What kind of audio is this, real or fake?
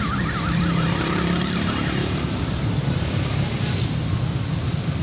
fake